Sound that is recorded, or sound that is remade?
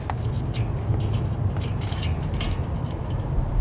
recorded